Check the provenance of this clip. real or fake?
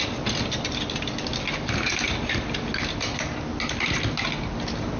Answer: real